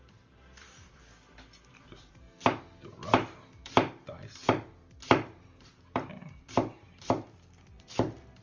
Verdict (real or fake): fake